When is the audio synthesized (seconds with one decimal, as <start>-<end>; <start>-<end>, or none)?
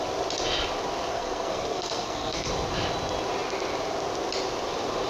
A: 1.1-2.5